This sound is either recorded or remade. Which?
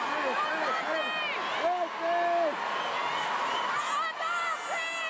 recorded